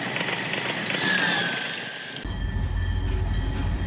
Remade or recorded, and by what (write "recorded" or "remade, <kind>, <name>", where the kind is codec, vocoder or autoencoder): recorded